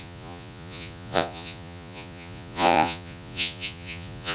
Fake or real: fake